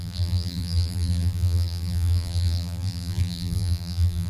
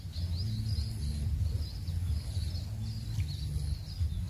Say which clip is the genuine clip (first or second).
second